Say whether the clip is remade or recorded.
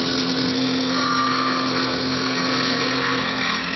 remade